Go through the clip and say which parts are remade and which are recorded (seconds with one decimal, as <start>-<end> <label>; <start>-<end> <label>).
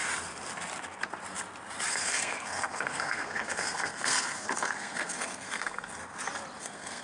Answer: 0.0-1.9 recorded; 1.9-6.0 remade; 6.0-6.6 recorded; 6.6-7.0 remade